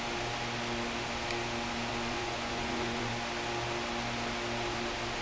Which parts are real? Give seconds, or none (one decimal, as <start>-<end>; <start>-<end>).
0.0-1.9; 3.1-5.2